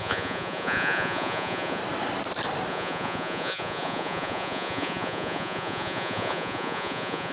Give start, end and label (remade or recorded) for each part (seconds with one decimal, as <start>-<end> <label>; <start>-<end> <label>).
0.0-1.8 remade; 1.8-2.7 recorded; 2.7-7.3 remade